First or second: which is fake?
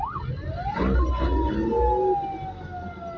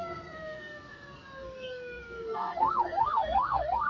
second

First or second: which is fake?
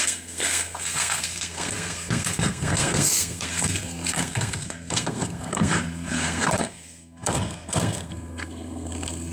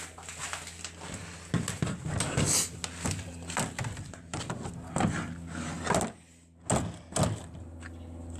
first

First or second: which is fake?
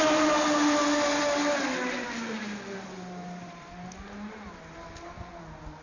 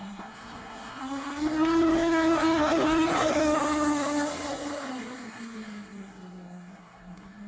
second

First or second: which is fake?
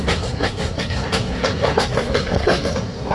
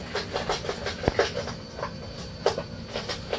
first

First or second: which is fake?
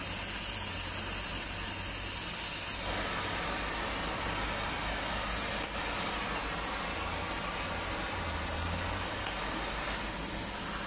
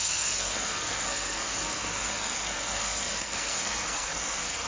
second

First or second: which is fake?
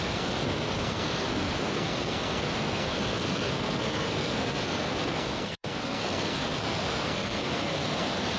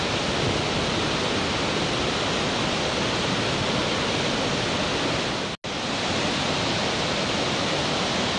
first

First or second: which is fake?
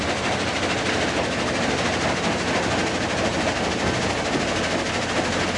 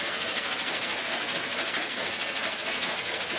second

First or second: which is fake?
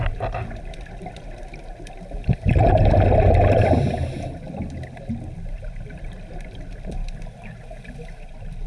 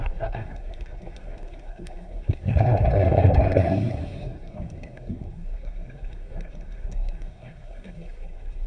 second